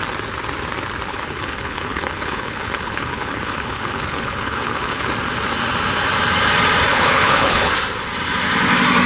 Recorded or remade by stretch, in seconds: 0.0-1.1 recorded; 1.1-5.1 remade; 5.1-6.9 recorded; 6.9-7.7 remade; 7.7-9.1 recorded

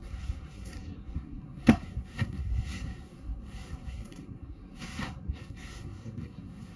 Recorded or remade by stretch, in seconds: 0.0-6.8 remade

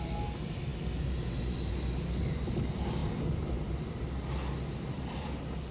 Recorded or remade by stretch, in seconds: 0.0-5.7 recorded